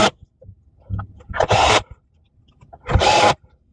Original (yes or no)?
no